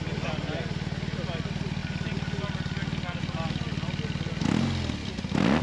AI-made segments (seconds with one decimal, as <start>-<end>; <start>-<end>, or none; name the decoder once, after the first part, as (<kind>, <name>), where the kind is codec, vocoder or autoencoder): none